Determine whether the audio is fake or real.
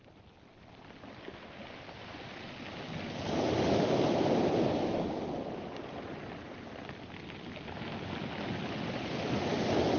real